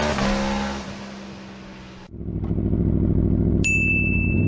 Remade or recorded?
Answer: recorded